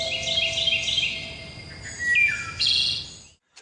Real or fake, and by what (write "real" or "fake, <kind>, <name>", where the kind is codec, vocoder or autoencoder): real